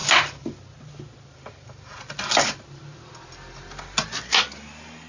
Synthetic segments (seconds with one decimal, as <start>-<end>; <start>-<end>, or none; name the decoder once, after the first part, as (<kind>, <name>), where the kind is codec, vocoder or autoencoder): none